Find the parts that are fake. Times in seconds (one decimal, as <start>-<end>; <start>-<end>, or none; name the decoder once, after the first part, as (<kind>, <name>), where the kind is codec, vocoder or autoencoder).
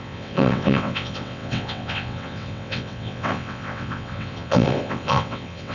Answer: 0.0-5.7 (vocoder, WaveNeXt)